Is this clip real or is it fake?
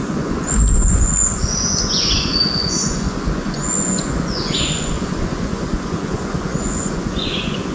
fake